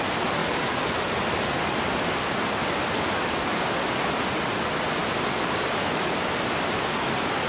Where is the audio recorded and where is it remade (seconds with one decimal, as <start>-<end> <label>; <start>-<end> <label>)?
0.0-7.5 recorded